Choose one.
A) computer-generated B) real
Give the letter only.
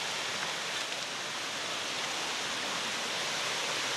B